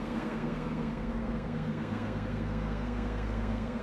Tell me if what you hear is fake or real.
fake